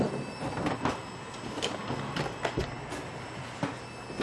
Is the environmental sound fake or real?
real